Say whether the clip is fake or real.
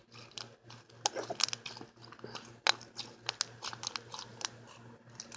real